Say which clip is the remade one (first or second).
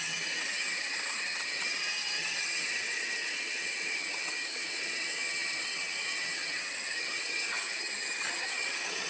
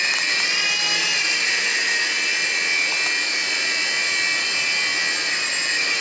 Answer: first